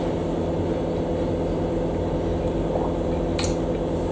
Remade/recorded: recorded